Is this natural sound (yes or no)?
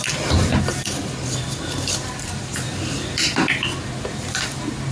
no